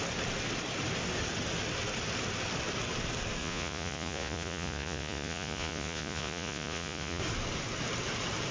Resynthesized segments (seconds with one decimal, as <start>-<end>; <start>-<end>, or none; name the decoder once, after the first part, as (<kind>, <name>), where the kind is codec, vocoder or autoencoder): 3.4-7.2 (vocoder, Vocos)